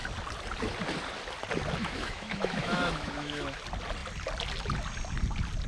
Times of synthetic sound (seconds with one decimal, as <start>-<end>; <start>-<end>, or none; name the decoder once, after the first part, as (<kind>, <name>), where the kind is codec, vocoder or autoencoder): 1.8-3.6 (autoencoder, DAC-VAE)